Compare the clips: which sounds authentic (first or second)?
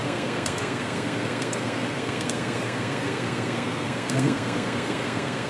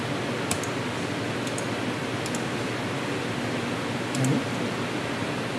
second